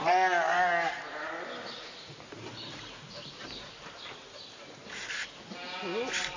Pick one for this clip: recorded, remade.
recorded